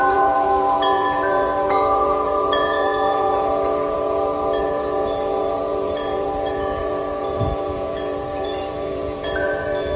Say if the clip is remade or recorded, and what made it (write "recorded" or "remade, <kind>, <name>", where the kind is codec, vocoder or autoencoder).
remade, vocoder, Vocos